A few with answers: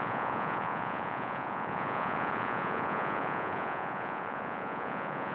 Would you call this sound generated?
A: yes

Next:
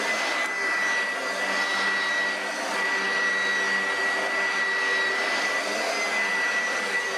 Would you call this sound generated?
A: no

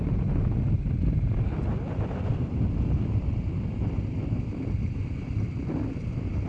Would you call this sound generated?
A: no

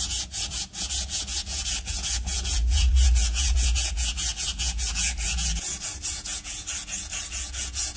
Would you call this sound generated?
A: yes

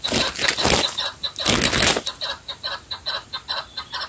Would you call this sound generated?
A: no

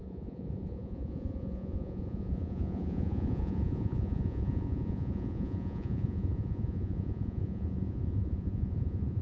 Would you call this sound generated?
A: yes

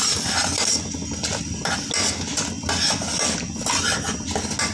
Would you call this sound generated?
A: no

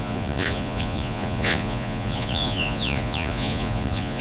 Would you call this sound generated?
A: yes